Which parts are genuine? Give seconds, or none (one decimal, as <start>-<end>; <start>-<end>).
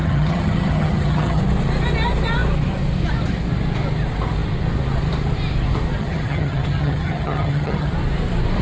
1.4-6.0; 7.9-8.6